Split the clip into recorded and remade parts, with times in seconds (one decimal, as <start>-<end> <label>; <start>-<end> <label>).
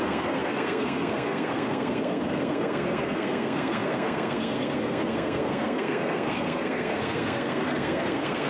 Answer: 0.0-8.5 remade